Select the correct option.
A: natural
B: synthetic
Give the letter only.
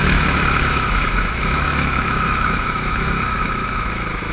B